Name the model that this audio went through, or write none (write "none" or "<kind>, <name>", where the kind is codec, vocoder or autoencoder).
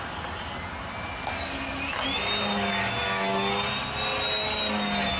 none